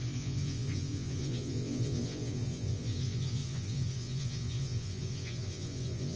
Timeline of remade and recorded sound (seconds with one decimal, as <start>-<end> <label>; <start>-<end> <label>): 0.0-6.2 remade